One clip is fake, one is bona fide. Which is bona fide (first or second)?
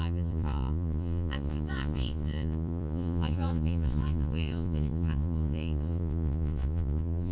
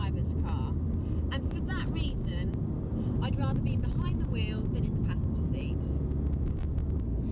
second